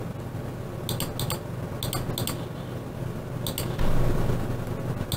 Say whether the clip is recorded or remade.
recorded